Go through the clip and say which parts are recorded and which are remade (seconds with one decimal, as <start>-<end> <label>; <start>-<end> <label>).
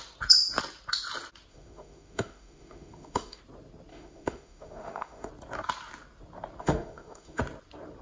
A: 0.0-1.5 recorded; 1.5-3.4 remade; 3.4-3.9 recorded; 3.9-5.3 remade; 5.3-6.6 recorded; 6.6-7.4 remade; 7.4-8.0 recorded